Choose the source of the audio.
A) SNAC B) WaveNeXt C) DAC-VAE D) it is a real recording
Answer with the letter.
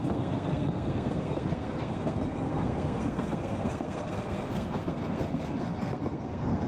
A